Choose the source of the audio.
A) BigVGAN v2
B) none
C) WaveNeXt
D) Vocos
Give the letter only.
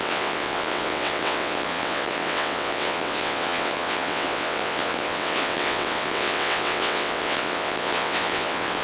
C